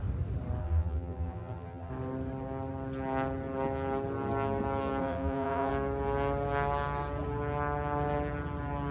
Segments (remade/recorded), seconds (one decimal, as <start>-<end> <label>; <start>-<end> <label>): 0.0-0.6 recorded; 0.6-1.9 remade; 1.9-5.0 recorded; 5.0-5.7 remade; 5.7-8.9 recorded